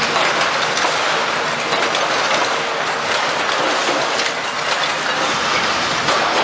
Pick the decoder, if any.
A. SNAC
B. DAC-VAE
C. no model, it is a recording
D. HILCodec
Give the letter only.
C